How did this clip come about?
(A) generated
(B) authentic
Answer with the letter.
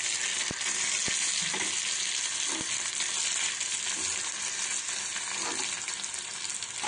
B